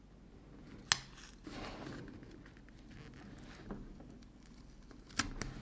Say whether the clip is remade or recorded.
recorded